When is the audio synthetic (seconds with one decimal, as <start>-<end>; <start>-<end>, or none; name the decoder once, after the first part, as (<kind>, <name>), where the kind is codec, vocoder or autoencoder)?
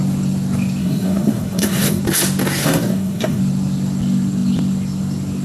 0.8-2.0 (codec, SNAC); 2.6-3.4